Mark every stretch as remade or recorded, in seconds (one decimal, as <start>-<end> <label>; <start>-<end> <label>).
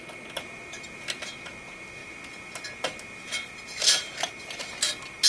0.0-5.3 recorded